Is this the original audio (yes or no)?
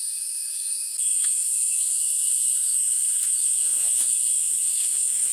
no